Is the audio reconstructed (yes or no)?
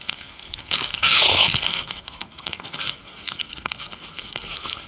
yes